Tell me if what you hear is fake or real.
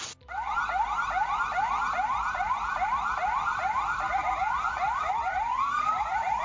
fake